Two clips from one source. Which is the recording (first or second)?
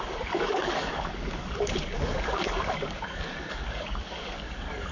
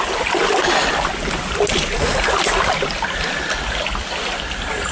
second